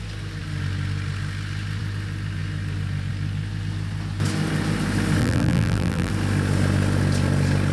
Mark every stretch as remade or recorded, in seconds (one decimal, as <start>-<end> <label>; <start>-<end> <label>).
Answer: 0.0-5.2 recorded; 5.2-6.1 remade; 6.1-7.7 recorded